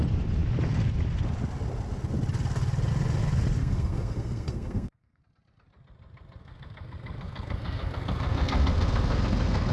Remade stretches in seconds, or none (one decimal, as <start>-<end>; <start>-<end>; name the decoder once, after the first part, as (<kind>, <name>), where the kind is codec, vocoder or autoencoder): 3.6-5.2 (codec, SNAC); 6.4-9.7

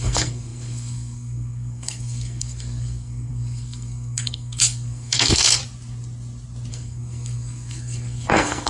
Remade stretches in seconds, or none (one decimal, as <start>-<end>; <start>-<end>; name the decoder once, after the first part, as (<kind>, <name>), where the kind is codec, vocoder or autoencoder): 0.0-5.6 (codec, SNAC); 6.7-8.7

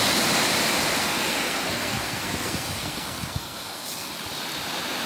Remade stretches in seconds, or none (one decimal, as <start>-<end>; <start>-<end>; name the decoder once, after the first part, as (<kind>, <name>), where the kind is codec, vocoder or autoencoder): 1.0-4.1 (codec, SNAC)

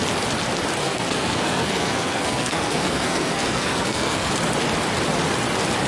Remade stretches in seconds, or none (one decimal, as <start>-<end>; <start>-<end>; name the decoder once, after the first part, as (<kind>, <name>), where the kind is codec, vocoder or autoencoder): 0.8-4.3 (codec, SNAC)

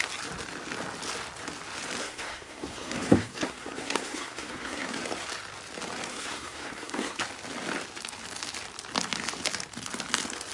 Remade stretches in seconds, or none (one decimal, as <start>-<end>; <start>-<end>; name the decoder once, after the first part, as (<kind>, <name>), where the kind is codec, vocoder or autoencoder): 2.0-5.0 (codec, SNAC); 6.1-7.2

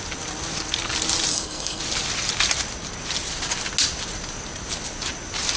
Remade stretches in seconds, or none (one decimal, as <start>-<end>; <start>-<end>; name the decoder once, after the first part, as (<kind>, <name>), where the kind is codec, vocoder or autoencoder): 1.3-1.8 (codec, SNAC)